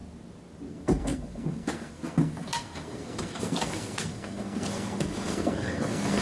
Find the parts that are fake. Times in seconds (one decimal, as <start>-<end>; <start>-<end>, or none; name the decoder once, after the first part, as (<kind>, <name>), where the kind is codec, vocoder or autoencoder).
0.7-6.2 (codec, SNAC)

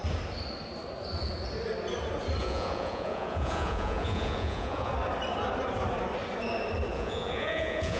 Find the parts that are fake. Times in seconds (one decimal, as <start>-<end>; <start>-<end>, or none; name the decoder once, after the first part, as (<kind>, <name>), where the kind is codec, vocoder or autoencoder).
2.4-4.9 (vocoder, Vocos); 6.9-8.0